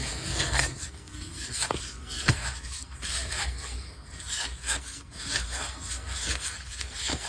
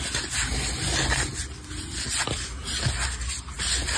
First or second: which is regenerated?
first